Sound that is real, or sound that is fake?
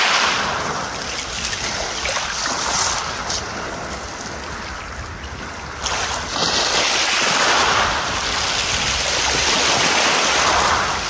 real